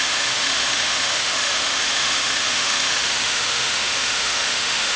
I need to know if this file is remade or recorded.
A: remade